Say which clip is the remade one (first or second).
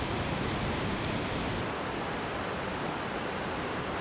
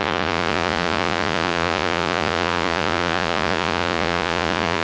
second